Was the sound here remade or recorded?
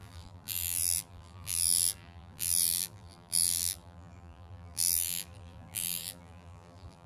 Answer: remade